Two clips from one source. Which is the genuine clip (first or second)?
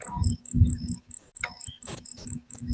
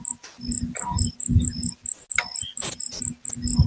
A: second